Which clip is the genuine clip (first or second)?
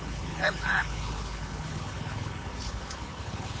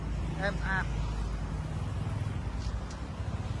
second